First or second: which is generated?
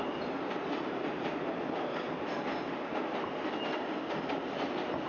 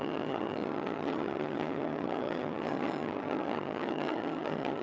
second